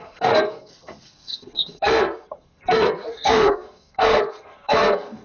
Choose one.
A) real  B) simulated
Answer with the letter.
B